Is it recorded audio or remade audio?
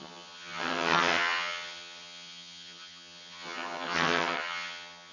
remade